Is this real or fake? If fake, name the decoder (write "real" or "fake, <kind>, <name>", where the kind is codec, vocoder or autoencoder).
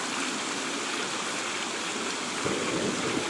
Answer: real